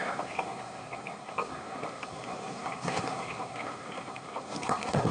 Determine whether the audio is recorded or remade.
remade